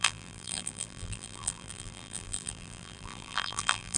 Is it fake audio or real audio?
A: fake